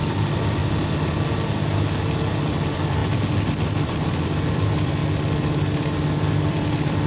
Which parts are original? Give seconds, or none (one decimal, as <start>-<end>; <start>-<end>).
0.6-2.5; 3.0-4.5; 5.0-6.3